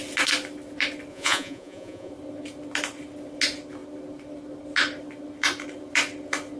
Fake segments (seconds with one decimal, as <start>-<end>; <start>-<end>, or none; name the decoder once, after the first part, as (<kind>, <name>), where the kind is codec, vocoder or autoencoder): 1.1-2.1 (vocoder, Vocos)